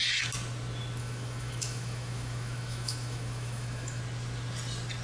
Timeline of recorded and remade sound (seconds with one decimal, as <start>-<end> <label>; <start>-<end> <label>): 0.0-1.0 recorded; 1.0-4.0 remade; 4.0-5.0 recorded